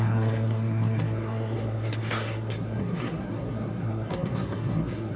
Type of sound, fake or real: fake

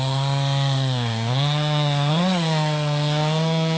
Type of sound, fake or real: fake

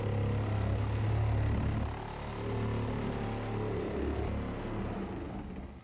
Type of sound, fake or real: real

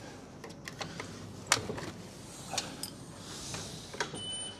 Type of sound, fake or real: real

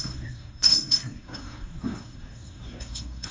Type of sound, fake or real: fake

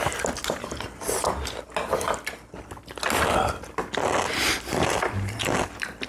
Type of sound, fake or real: real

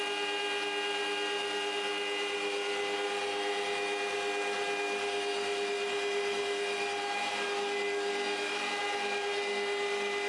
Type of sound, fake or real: real